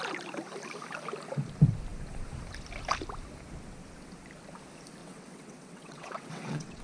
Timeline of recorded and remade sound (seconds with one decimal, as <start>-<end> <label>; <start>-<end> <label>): 0.0-5.0 recorded; 5.0-6.8 remade